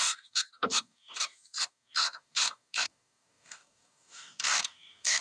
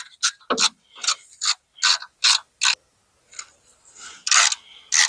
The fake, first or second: first